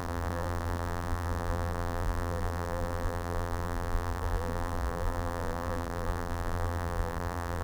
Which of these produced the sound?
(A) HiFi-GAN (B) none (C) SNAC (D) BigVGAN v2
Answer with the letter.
D